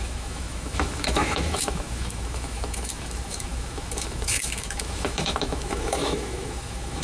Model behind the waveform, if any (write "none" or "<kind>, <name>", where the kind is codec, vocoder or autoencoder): autoencoder, DAC-VAE